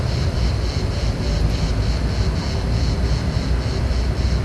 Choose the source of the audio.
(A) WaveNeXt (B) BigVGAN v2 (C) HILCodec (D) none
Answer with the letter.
D